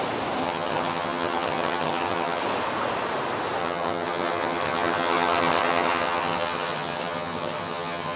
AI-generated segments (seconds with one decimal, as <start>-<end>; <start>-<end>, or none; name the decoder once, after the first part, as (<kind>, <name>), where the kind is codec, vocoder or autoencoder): 0.4-2.4 (vocoder, HiFi-GAN); 3.6-8.2